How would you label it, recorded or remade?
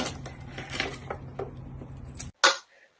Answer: recorded